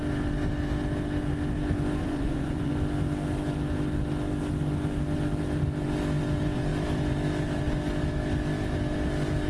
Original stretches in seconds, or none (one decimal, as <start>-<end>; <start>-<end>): 0.0-2.0; 2.7-9.5